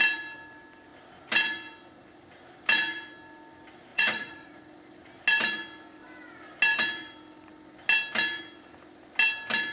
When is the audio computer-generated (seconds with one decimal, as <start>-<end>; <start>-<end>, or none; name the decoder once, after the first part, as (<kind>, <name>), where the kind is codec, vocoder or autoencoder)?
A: 3.9-4.6 (vocoder, Vocos)

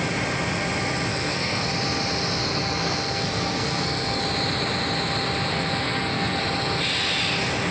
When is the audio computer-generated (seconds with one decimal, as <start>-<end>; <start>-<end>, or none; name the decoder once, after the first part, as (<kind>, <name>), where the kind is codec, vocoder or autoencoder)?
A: 1.1-1.7 (codec, SNAC); 2.4-4.2; 5.5-6.4

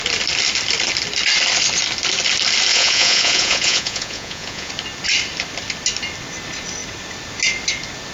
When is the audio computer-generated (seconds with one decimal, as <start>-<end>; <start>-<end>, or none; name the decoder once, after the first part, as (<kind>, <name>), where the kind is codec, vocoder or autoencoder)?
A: 2.7-4.7 (vocoder, Vocos)

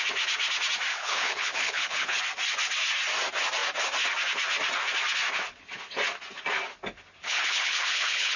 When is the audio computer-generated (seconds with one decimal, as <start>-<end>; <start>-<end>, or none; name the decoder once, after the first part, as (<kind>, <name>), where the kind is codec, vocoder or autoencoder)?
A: 0.9-2.2 (codec, HILCodec); 7.2-8.4

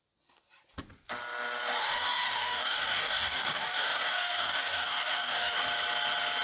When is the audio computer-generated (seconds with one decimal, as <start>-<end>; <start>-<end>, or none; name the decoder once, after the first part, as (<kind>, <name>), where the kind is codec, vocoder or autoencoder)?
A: 1.8-5.6 (codec, DAC)

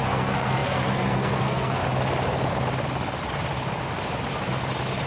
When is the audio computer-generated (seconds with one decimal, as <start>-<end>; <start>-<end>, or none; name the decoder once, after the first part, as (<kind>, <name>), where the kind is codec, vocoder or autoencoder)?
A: 0.0-1.8 (codec, SNAC)

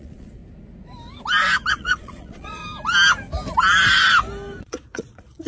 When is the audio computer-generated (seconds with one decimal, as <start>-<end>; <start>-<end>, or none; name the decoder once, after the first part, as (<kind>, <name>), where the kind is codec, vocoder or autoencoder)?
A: 0.0-0.4 (vocoder, Vocos); 1.7-2.6; 4.6-5.5

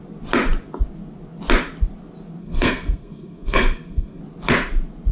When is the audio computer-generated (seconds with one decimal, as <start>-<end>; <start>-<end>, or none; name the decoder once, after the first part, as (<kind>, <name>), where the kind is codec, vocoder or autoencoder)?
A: 2.4-4.2 (codec, SNAC)